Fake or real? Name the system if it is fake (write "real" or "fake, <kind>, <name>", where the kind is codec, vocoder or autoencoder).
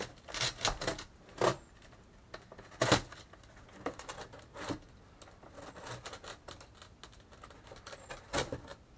real